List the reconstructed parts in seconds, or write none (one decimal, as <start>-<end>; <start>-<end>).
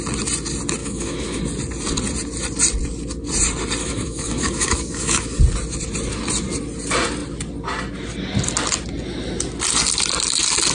0.8-1.4; 3.8-5.4